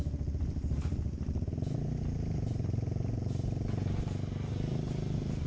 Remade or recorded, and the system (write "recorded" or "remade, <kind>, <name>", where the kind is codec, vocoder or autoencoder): recorded